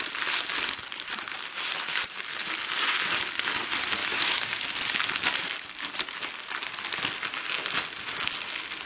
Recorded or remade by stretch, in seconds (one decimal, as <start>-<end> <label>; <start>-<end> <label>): 0.0-4.0 recorded; 4.0-4.5 remade; 4.5-8.9 recorded